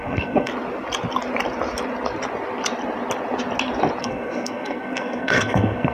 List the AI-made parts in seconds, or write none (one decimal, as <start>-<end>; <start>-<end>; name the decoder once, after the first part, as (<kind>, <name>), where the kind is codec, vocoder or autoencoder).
0.0-0.5 (codec, SNAC); 4.0-5.9

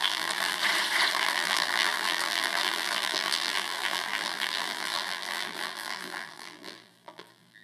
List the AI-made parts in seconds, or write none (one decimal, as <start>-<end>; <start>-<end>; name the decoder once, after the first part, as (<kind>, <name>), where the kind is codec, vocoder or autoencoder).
0.0-0.6 (vocoder, BigVGAN v2); 1.1-7.6

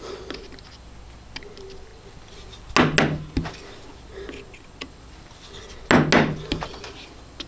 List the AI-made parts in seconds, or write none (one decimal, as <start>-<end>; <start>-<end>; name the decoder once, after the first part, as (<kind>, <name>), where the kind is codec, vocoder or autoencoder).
none